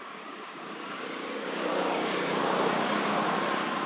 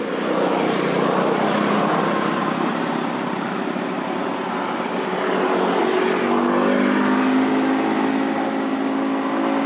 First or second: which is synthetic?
first